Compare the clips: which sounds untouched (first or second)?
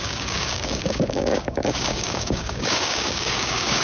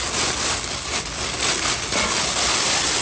second